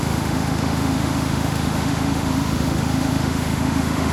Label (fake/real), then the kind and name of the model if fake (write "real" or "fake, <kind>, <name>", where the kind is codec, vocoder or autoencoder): fake, autoencoder, DAC-VAE